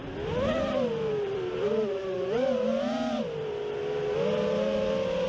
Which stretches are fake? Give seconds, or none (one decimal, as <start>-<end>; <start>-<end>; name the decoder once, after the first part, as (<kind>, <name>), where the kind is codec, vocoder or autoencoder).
none